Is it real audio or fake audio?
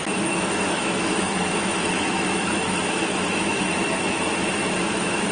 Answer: fake